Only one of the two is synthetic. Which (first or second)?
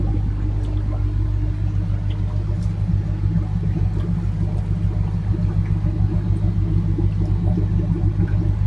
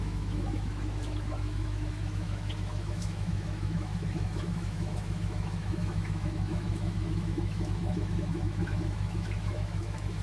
second